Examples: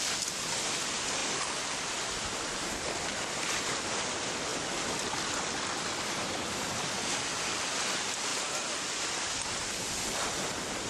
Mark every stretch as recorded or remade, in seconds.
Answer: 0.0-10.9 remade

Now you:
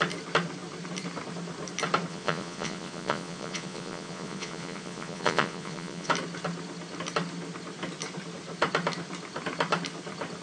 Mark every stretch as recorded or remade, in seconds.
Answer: 0.0-2.1 recorded; 2.1-6.1 remade; 6.1-10.4 recorded

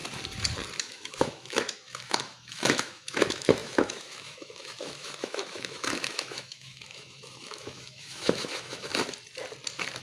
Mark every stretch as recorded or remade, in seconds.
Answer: 0.0-0.8 recorded; 0.8-8.9 remade; 8.9-10.0 recorded